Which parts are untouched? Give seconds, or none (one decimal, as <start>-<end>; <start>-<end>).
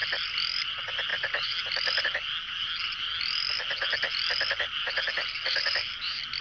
0.0-6.4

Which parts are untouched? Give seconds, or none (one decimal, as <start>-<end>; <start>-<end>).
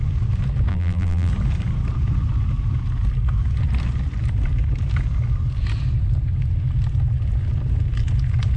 0.0-0.7; 1.3-8.6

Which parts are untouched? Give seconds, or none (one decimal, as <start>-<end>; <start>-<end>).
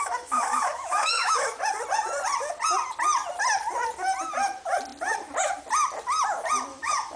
1.6-6.7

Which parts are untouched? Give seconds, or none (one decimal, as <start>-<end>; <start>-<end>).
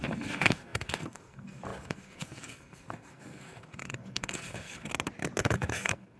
4.9-5.4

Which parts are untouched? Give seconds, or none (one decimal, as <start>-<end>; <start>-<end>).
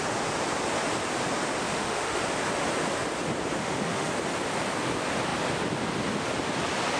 0.0-1.7; 2.2-3.6; 4.1-7.0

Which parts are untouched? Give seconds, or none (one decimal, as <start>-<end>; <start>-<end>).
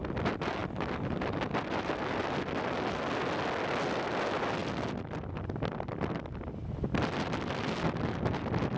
0.0-8.8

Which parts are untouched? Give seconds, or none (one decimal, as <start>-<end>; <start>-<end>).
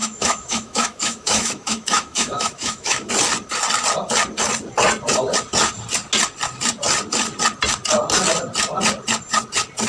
3.1-9.9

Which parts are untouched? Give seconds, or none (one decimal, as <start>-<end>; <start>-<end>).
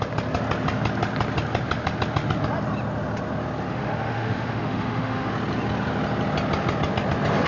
0.0-3.7; 5.3-7.5